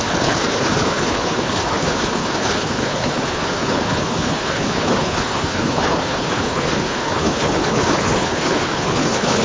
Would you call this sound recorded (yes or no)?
no